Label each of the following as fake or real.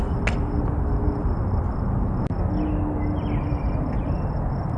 real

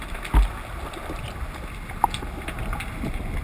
real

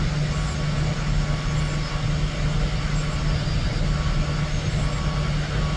real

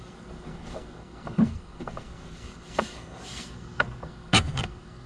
fake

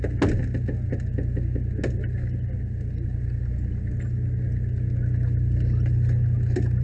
real